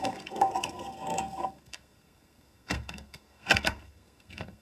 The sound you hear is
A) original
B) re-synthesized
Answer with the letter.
B